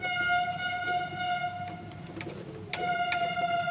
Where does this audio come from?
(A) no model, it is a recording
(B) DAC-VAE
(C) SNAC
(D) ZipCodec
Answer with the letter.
A